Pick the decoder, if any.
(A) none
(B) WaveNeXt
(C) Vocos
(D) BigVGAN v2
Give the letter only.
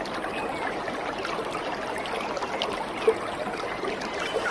A